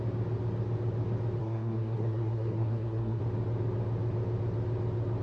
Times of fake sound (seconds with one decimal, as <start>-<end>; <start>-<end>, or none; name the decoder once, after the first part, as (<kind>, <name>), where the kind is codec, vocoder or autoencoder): 1.4-3.2 (codec, SNAC)